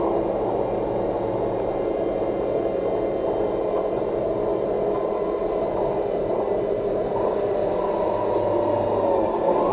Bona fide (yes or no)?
yes